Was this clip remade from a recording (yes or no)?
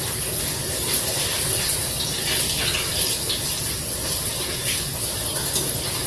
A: no